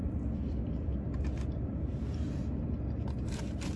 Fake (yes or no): no